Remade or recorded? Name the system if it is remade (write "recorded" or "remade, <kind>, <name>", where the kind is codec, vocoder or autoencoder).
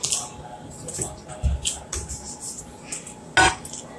recorded